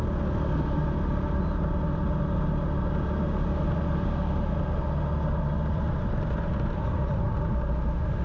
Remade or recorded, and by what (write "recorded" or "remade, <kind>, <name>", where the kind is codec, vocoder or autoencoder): recorded